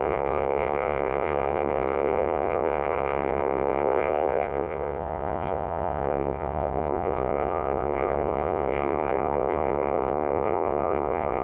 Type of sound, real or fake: fake